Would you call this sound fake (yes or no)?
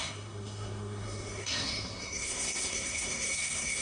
yes